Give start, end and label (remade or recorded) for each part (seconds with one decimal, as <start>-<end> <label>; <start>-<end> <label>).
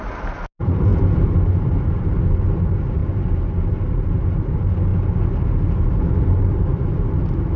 0.0-7.6 recorded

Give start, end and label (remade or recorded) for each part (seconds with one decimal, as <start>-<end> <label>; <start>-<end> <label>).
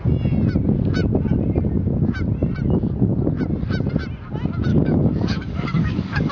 0.0-4.7 recorded; 4.7-6.3 remade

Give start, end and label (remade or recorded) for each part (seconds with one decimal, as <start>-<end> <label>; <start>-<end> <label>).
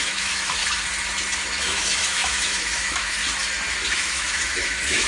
0.0-0.6 remade; 0.6-1.6 recorded; 1.6-3.2 remade; 3.2-3.9 recorded; 3.9-5.1 remade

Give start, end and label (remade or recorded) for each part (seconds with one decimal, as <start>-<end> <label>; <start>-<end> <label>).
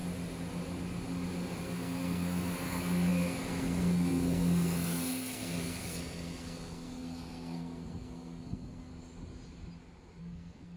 0.0-1.6 recorded; 1.6-8.9 remade; 8.9-10.2 recorded; 10.2-10.8 remade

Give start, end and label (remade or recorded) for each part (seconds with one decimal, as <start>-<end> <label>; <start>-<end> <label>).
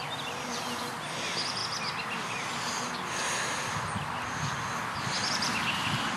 0.0-6.2 recorded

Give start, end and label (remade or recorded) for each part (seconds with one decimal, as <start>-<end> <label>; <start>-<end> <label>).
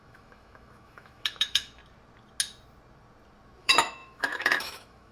0.0-1.8 remade; 1.8-3.6 recorded; 3.6-5.1 remade